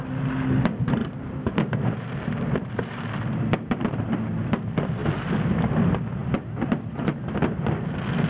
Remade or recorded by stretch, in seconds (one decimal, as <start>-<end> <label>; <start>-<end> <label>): 0.0-1.0 recorded; 1.0-2.3 remade; 2.3-5.0 recorded; 5.0-5.5 remade; 5.5-8.3 recorded